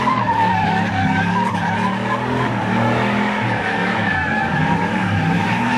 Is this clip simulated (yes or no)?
yes